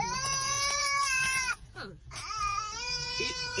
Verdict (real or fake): fake